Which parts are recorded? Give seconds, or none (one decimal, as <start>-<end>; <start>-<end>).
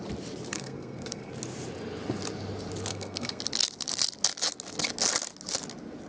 0.0-0.5; 1.3-2.9; 3.4-6.1